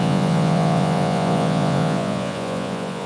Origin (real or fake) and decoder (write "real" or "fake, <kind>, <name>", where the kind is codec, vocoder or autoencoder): fake, vocoder, Vocos